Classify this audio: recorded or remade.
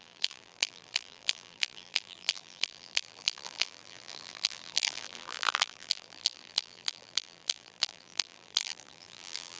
remade